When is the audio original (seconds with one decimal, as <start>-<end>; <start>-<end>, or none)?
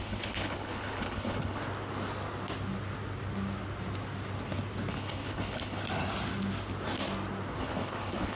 1.6-4.9; 5.8-7.6